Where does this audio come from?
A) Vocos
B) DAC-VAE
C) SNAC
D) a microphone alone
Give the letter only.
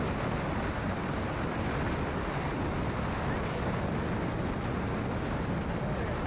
D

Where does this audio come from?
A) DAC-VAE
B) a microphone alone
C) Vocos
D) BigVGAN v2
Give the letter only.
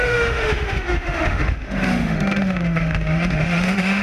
A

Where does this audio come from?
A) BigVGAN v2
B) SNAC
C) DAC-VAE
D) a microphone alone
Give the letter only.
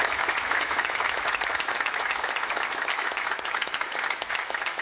C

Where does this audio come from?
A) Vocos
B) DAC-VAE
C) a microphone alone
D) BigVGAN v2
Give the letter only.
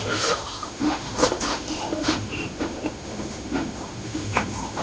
B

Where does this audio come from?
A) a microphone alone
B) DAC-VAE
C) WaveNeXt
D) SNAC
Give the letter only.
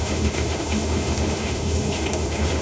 B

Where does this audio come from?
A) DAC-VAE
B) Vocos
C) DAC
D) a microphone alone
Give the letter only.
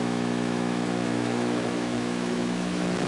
A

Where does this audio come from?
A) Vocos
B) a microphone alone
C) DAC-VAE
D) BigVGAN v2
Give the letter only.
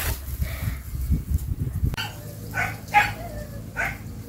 B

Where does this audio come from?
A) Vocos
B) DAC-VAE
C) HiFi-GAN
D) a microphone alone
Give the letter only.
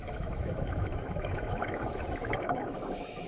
B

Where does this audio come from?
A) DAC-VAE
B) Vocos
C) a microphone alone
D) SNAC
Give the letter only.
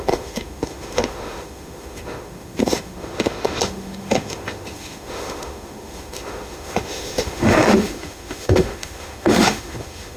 A